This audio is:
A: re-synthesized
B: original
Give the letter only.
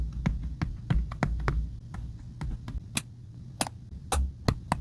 B